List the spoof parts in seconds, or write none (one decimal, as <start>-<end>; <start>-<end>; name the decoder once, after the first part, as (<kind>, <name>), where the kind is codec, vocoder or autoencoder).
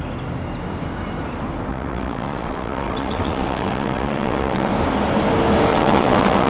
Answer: 1.7-4.7 (vocoder, WaveNeXt); 5.7-6.5